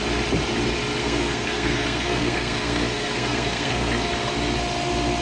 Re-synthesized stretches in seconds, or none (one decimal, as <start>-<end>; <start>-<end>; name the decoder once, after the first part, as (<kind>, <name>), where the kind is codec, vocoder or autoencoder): 1.0-4.1 (codec, SNAC)

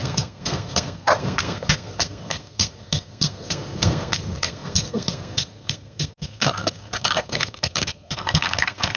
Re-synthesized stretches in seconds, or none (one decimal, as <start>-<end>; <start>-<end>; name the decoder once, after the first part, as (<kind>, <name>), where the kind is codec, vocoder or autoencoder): 0.0-9.0 (codec, SNAC)